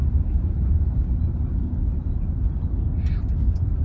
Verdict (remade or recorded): recorded